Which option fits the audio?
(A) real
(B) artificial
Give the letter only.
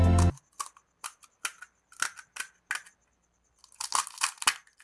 A